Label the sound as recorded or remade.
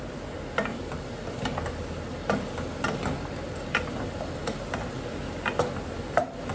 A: recorded